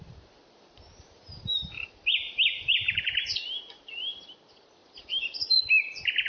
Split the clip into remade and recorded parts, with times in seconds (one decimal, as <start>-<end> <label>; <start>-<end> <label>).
0.0-0.4 recorded; 0.4-4.2 remade; 4.2-4.8 recorded; 4.8-5.6 remade; 5.6-6.3 recorded